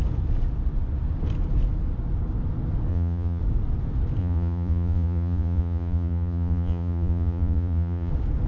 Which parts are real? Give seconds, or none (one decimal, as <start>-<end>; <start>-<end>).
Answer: 0.0-2.9; 3.4-4.2; 8.1-8.5